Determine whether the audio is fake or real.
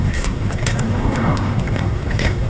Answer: fake